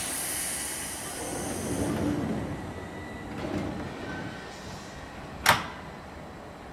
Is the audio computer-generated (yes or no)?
no